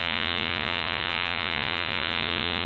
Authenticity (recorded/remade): remade